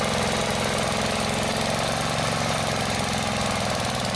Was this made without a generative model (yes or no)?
yes